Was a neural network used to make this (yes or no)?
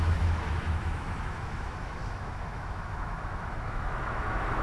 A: yes